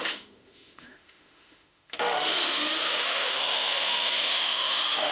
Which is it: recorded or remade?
remade